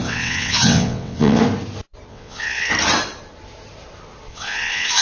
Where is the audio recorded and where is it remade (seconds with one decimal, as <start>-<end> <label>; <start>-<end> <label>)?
0.0-1.4 remade; 1.4-2.1 recorded; 2.1-2.7 remade; 2.7-4.3 recorded; 4.3-5.0 remade

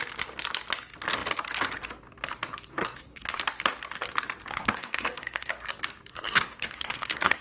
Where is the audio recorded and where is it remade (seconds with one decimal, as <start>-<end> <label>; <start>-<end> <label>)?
0.0-2.8 recorded; 2.8-3.4 remade; 3.4-4.5 recorded; 4.5-5.5 remade; 5.5-6.1 recorded; 6.1-7.4 remade

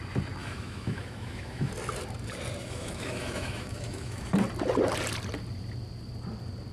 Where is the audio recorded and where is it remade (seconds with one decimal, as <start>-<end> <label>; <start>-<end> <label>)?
0.0-0.4 recorded; 0.4-1.7 remade; 1.7-2.6 recorded; 2.6-4.3 remade; 4.3-6.7 recorded

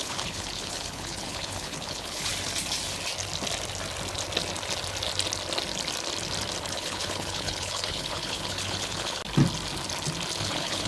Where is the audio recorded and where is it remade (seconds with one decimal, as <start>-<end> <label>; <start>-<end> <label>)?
0.0-2.3 remade; 2.3-6.7 recorded; 6.7-9.2 remade; 9.2-10.4 recorded; 10.4-10.9 remade

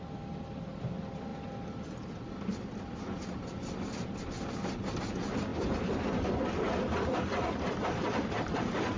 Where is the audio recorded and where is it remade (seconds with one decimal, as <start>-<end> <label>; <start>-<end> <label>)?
0.0-9.0 recorded

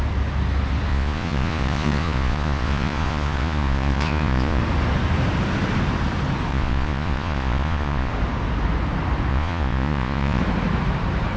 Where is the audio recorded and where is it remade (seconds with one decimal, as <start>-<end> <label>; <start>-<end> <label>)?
0.0-0.9 recorded; 0.9-4.6 remade; 4.6-6.5 recorded; 6.5-8.1 remade; 8.1-9.3 recorded; 9.3-10.4 remade; 10.4-11.4 recorded

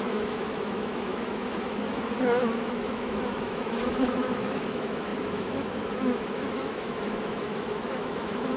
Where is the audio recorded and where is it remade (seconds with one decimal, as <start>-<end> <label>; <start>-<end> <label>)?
0.0-8.6 remade